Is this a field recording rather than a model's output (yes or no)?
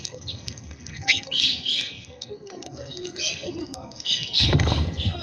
no